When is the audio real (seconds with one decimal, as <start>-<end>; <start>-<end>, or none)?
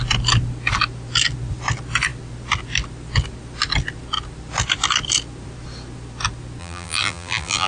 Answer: 0.0-6.6